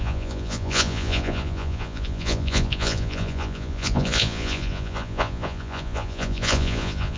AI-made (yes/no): yes